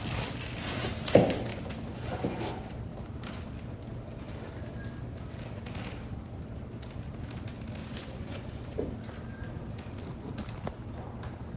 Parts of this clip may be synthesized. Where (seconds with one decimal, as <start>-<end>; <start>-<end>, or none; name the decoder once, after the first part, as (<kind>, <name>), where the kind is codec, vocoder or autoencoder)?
1.5-2.4 (vocoder, Vocos); 7.8-8.9